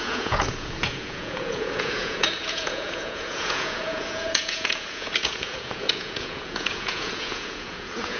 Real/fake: fake